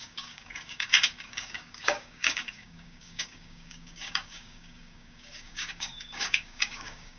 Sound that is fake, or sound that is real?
fake